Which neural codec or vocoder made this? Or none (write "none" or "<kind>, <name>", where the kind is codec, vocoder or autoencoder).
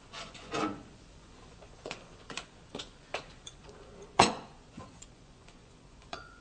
vocoder, Vocos